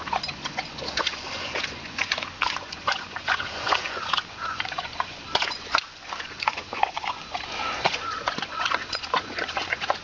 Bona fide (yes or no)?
no